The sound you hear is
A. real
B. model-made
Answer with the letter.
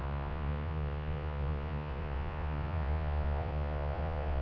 B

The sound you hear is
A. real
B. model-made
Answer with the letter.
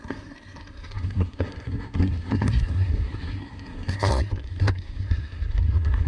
B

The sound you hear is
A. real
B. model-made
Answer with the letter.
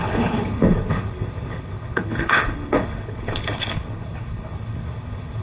B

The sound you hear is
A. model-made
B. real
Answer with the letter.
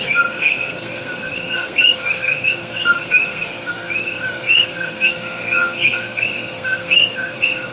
A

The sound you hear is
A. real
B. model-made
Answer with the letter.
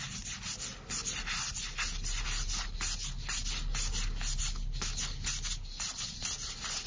A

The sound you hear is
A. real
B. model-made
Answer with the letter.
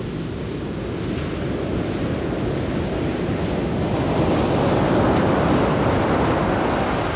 A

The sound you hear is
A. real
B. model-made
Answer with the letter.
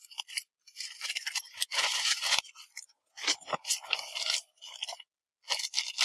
A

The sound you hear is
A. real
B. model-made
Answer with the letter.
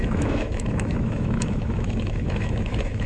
B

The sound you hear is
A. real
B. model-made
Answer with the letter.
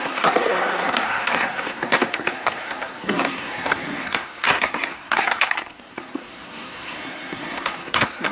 B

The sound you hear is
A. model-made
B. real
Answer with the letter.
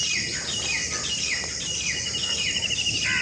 B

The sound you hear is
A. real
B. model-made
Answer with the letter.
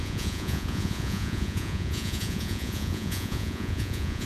B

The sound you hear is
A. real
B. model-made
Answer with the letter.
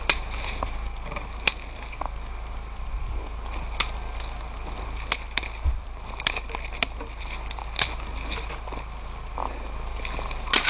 A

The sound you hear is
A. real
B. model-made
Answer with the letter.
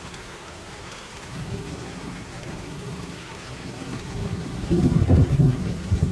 B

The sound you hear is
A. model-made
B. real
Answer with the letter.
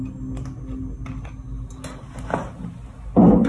B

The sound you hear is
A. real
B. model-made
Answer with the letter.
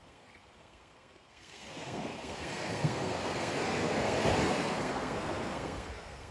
B